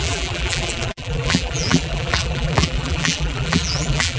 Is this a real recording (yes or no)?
no